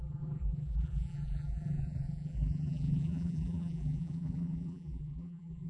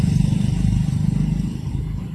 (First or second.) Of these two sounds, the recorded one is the second